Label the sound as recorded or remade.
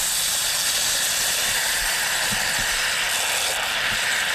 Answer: recorded